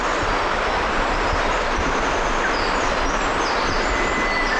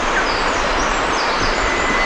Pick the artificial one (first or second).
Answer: second